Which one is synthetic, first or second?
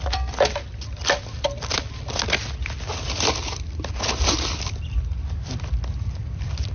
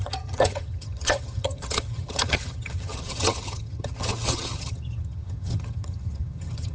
second